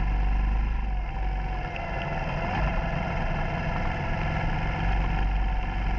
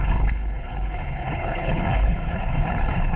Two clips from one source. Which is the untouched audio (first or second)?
first